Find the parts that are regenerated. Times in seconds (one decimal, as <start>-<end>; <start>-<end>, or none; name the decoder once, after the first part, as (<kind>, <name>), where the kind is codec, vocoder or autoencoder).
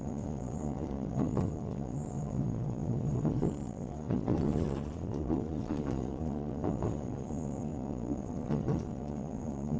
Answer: 0.0-9.8 (vocoder, Vocos)